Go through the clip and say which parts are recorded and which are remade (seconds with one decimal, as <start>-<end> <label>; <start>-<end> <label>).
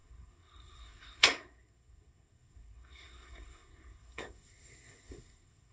0.0-5.7 remade